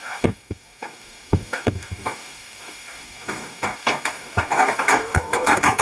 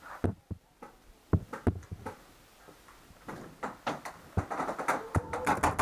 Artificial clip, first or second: first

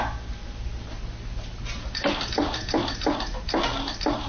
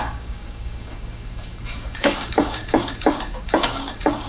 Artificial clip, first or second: second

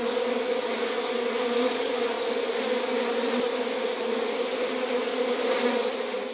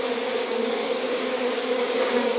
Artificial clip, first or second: second